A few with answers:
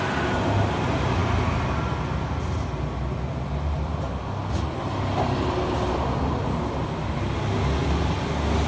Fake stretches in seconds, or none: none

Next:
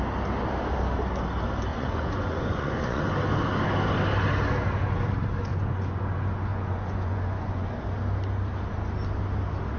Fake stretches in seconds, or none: 1.7-3.0 (vocoder, Vocos); 5.5-6.0; 6.5-7.7

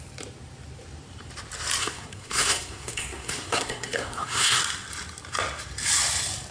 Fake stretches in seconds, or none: 1.8-4.6 (codec, SNAC)

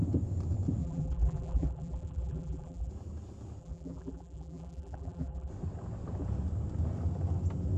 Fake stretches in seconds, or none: 0.8-2.9 (vocoder, BigVGAN v2); 3.6-5.5

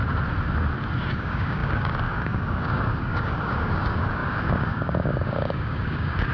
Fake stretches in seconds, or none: 1.0-6.3 (codec, DAC)